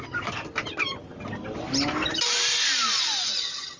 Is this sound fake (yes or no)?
no